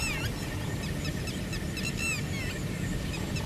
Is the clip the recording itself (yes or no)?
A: yes